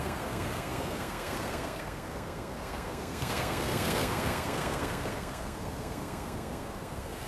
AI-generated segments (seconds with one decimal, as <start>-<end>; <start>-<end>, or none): 0.0-7.3